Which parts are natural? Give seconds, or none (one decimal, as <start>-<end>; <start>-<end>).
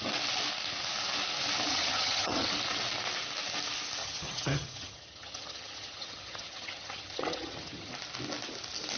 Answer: 0.0-1.7; 2.5-4.0; 7.9-9.0